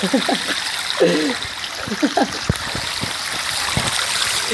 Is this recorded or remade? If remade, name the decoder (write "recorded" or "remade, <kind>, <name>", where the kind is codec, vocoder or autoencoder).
recorded